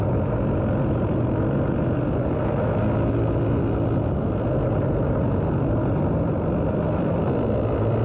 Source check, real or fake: real